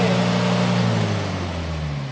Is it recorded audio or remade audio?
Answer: recorded